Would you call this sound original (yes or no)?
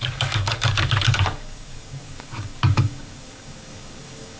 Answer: no